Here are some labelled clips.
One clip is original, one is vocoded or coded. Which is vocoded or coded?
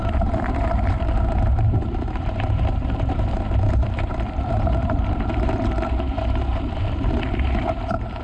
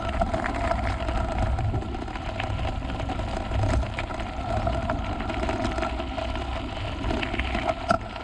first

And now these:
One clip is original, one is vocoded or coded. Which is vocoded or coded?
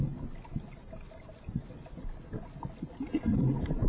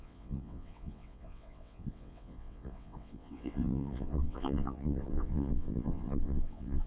second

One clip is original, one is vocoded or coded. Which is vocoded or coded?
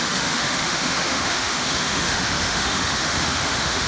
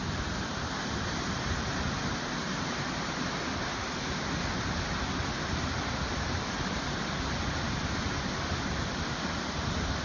first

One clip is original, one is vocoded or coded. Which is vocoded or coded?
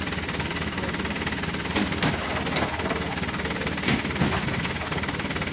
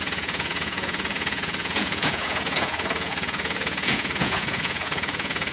second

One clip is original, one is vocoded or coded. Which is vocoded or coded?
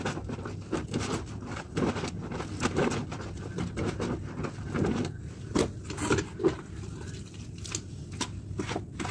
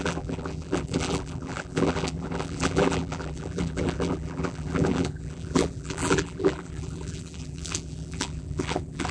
second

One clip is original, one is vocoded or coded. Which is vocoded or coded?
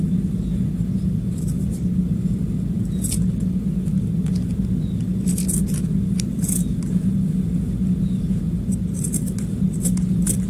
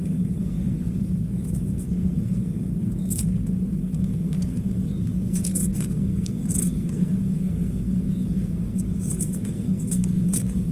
second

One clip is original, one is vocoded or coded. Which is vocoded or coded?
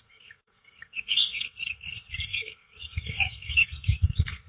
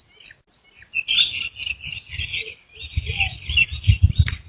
first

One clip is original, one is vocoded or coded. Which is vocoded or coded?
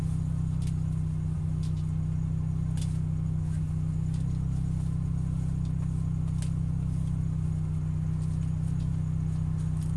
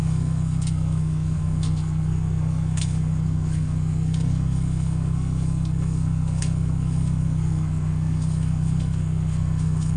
second